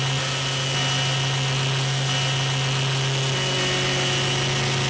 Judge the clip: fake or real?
real